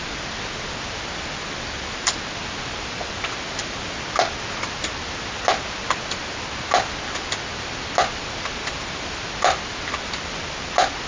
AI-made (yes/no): no